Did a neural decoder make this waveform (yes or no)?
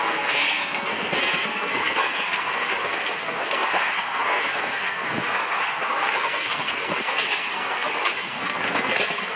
yes